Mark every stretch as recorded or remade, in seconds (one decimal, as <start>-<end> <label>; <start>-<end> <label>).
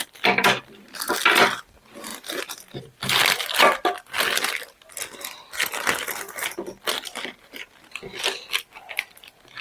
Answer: 0.0-2.1 recorded; 2.1-2.8 remade; 2.8-7.1 recorded; 7.1-8.9 remade; 8.9-9.6 recorded